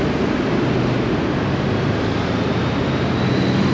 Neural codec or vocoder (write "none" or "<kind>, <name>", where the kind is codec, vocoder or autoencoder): none